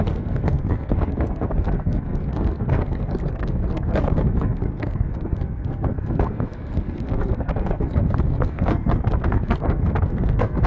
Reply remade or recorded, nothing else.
remade